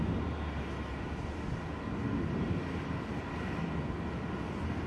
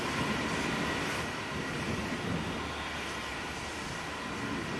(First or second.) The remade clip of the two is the second